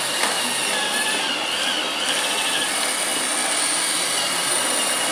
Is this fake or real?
real